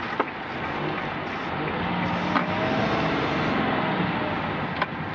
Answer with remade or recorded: recorded